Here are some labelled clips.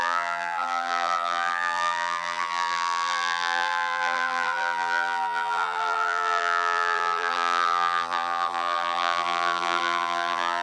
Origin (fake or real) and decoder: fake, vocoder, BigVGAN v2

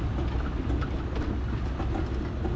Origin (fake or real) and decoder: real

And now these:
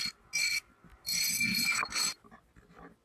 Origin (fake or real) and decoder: real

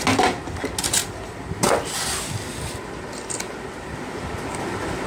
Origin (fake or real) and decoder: real